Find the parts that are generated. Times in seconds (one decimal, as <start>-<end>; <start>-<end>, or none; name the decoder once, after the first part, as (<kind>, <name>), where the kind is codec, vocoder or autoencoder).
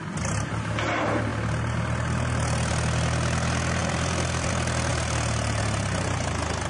3.8-4.5 (vocoder, BigVGAN v2); 4.9-5.6